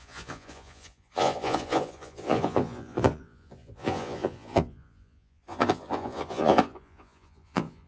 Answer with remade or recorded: remade